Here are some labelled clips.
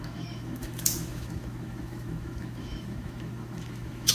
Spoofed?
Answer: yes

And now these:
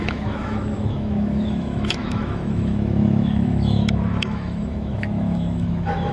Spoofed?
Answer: yes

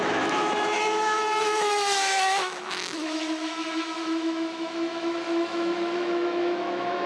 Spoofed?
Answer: yes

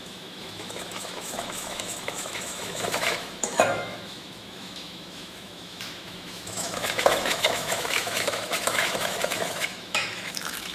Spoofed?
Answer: yes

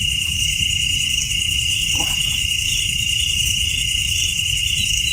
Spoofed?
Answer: yes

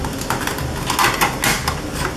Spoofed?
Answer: no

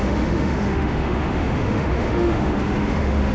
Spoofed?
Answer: yes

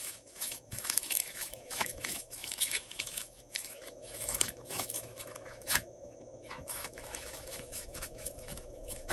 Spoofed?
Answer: yes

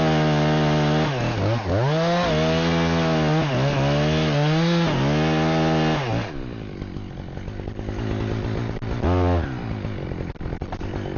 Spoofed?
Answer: no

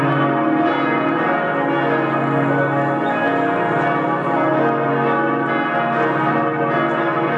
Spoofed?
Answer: no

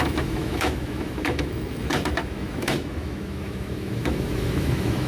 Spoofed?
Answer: yes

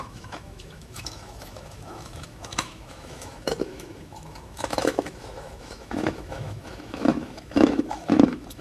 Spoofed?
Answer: yes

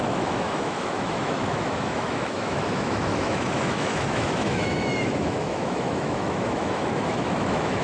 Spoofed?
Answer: yes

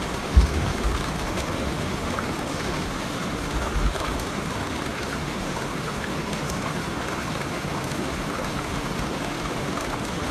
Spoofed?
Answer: yes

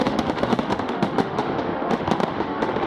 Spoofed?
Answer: yes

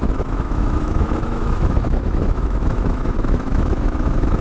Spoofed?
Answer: yes